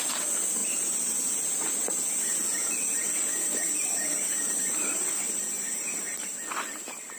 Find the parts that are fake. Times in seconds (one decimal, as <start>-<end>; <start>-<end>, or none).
0.6-2.1; 2.5-6.3